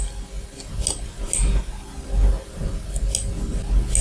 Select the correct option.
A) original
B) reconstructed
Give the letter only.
A